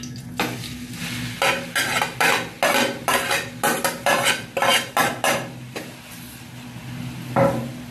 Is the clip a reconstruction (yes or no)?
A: no